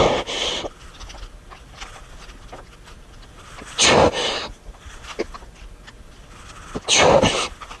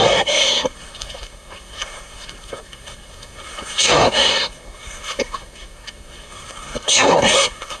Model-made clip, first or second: second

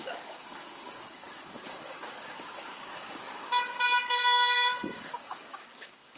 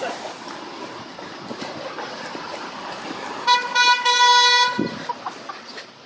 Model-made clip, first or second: first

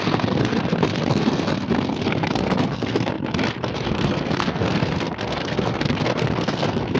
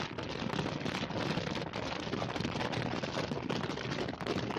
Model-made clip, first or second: first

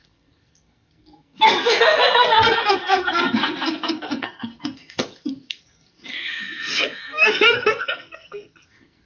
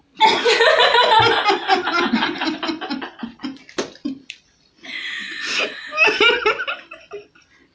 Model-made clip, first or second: first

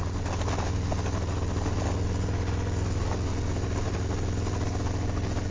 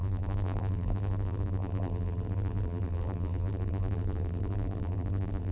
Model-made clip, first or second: second